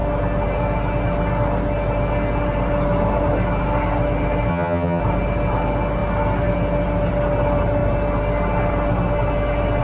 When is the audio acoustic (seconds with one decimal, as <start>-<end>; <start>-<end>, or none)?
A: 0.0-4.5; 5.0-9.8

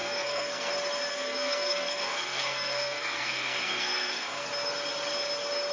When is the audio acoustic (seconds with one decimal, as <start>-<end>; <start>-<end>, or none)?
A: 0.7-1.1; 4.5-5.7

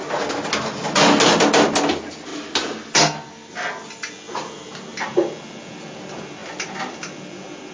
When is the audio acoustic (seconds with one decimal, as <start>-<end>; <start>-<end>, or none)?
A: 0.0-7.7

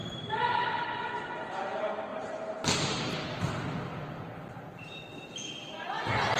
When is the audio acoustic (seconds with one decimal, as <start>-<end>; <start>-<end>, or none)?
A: 1.1-2.1; 3.5-6.4

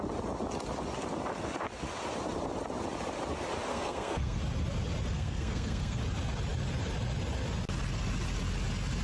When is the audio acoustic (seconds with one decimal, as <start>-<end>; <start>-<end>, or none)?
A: 0.0-3.7; 4.4-5.1; 6.0-9.0

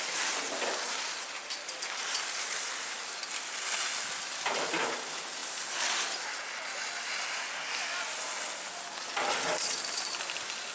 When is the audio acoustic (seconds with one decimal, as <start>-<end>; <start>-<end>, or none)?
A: 0.0-10.7

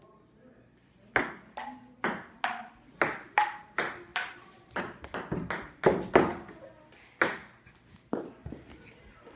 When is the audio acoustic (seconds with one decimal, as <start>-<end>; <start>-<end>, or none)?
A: 0.0-9.4

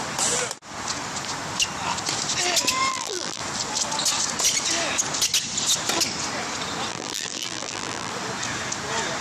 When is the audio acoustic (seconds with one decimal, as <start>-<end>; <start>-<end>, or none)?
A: 0.0-2.9; 3.4-6.9; 8.1-9.2